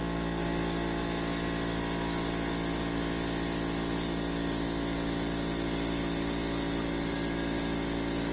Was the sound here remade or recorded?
recorded